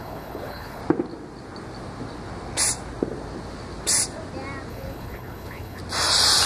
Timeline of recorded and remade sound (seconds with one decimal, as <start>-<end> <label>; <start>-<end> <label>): 0.0-0.8 remade; 0.8-4.7 recorded; 4.7-5.8 remade; 5.8-6.5 recorded